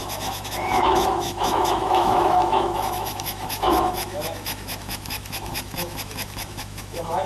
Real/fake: fake